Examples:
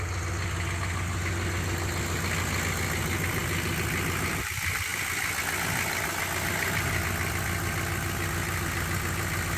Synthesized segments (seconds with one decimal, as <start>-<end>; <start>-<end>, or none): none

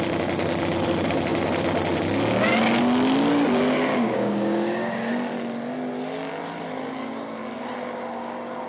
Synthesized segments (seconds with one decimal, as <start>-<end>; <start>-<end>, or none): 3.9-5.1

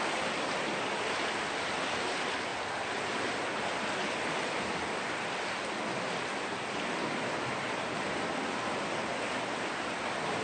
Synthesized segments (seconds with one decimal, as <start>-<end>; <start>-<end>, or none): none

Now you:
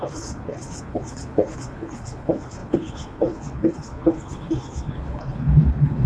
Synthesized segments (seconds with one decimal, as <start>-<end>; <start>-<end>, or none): 0.0-6.1

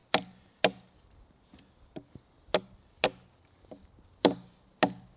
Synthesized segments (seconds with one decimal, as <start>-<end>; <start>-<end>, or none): none

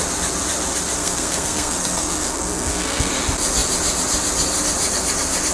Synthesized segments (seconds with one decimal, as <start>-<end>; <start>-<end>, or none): 1.0-3.1